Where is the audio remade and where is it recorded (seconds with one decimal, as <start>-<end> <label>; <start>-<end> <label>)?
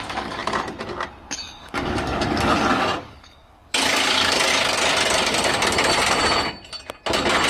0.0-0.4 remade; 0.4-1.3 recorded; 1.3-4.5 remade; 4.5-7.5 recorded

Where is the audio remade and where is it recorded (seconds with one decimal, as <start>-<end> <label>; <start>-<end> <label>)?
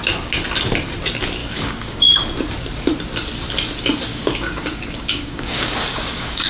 0.0-1.4 recorded; 1.4-2.2 remade; 2.2-4.1 recorded; 4.1-6.5 remade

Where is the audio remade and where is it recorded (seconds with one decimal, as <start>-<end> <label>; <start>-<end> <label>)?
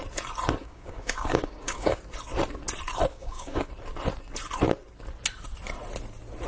0.0-0.6 recorded; 0.6-2.0 remade; 2.0-3.1 recorded; 3.1-3.7 remade; 3.7-6.5 recorded